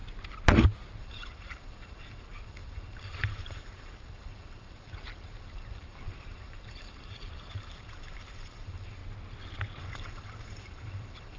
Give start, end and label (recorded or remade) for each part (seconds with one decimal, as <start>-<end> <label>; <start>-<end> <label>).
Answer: 0.0-1.0 recorded; 1.0-9.0 remade; 9.0-9.8 recorded; 9.8-11.4 remade